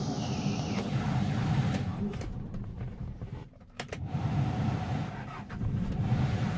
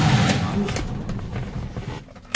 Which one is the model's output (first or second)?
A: first